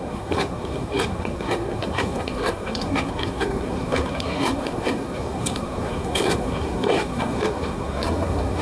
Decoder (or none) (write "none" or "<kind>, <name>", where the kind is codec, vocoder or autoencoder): codec, SNAC